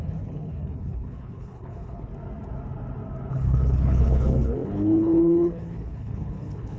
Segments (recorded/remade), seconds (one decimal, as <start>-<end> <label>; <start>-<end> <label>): 0.0-2.1 remade; 2.1-3.3 recorded; 3.3-6.8 remade